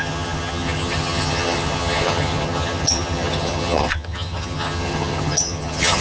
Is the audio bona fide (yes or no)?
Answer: no